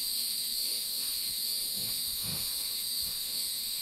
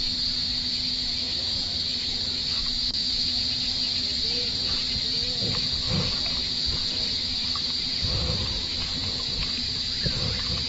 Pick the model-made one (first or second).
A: first